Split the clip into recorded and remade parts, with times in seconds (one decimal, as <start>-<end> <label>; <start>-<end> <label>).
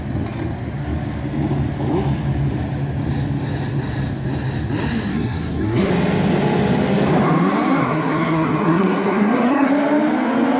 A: 0.0-5.1 recorded; 5.1-5.9 remade; 5.9-7.8 recorded; 7.8-9.7 remade; 9.7-10.6 recorded